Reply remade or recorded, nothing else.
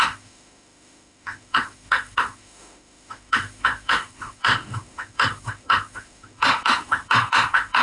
remade